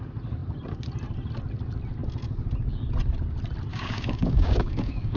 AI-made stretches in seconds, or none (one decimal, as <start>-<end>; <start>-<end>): 3.7-5.2